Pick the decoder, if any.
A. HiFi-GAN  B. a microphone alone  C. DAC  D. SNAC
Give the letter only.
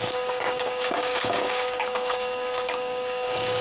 C